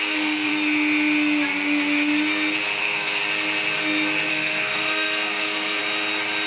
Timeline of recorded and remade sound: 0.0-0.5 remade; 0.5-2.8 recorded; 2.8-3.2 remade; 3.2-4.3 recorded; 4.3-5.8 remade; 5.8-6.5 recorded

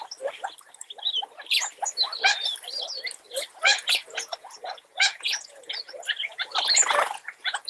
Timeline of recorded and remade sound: 0.0-3.5 recorded; 3.5-6.5 remade; 6.5-7.0 recorded; 7.0-7.7 remade

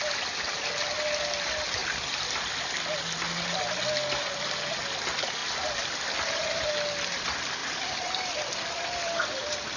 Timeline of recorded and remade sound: 0.0-1.8 recorded; 1.8-3.0 remade; 3.0-5.4 recorded; 5.4-6.7 remade; 6.7-7.6 recorded; 7.6-9.8 remade

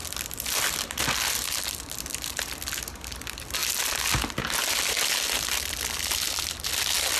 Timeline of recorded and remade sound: 0.0-7.2 recorded

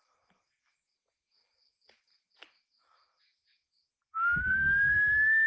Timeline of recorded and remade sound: 0.0-4.5 recorded; 4.5-5.5 remade

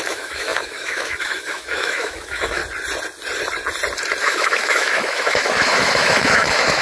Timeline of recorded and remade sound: 0.0-2.6 remade; 2.6-4.2 recorded; 4.2-6.8 remade

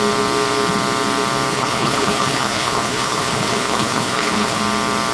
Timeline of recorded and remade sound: 0.0-1.5 recorded; 1.5-4.6 remade; 4.6-5.1 recorded

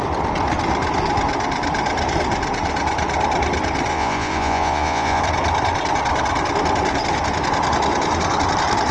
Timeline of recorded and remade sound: 0.0-3.9 recorded; 3.9-5.2 remade; 5.2-8.9 recorded